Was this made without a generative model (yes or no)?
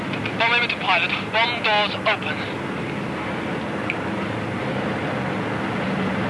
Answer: yes